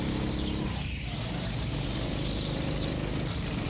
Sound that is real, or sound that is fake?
real